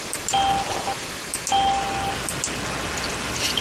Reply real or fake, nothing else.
real